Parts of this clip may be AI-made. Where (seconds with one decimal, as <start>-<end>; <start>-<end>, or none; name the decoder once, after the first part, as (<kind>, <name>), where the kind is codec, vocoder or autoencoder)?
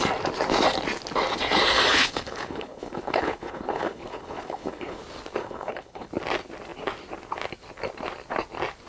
1.9-5.0 (codec, HILCodec); 5.4-6.1